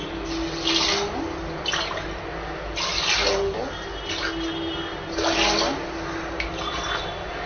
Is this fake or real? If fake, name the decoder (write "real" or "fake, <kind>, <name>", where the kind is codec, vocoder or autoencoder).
real